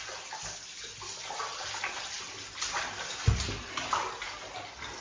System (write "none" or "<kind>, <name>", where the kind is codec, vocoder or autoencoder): none